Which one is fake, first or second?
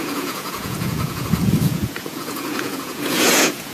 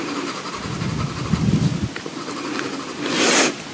first